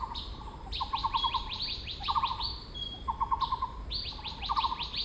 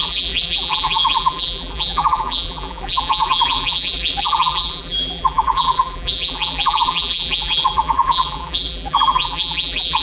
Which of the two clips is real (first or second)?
first